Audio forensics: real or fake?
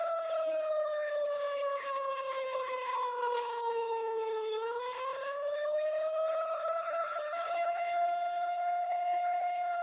fake